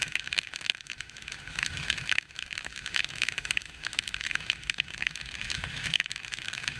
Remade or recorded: remade